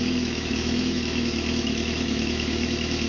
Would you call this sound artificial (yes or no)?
yes